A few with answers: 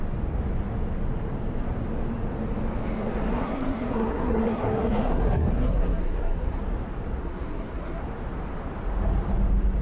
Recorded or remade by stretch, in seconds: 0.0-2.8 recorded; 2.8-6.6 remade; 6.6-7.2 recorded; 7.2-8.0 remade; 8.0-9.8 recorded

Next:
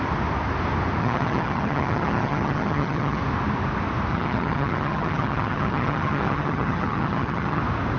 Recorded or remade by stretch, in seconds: 0.0-1.0 recorded; 1.0-3.2 remade; 3.2-4.1 recorded; 4.1-7.6 remade; 7.6-8.0 recorded

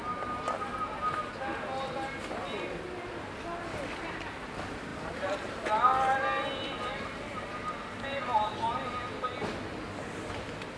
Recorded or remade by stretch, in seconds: 0.0-4.9 recorded; 4.9-5.5 remade; 5.5-10.8 recorded

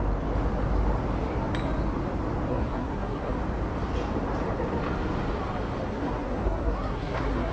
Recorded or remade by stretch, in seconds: 0.0-2.5 recorded; 2.5-3.4 remade; 3.4-5.9 recorded; 5.9-7.5 remade

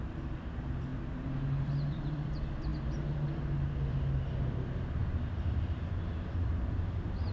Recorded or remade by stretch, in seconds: 0.0-0.9 remade; 0.9-1.4 recorded; 1.4-2.7 remade; 2.7-3.9 recorded; 3.9-7.3 remade